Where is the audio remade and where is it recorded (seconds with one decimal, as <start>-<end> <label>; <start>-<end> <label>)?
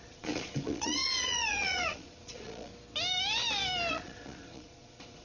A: 0.0-2.7 remade; 2.7-3.9 recorded; 3.9-5.2 remade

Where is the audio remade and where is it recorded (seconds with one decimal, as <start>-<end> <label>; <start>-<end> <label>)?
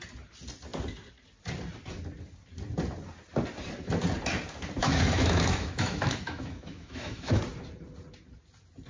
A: 0.0-4.8 recorded; 4.8-7.4 remade; 7.4-8.9 recorded